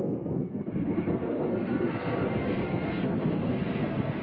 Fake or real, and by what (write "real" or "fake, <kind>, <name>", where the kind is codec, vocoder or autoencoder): fake, codec, SNAC